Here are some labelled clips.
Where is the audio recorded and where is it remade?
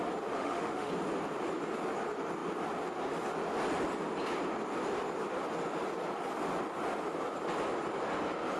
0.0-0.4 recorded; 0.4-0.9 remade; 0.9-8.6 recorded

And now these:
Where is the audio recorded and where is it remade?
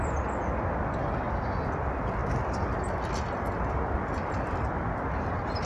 0.0-5.7 recorded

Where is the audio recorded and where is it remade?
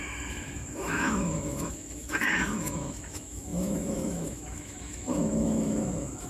0.0-6.3 remade